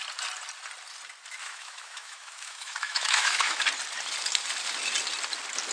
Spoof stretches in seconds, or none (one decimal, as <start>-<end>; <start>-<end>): 1.4-3.6